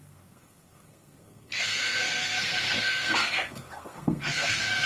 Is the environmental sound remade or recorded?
remade